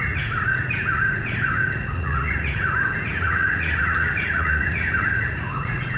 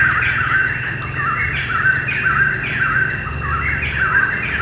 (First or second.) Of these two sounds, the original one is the second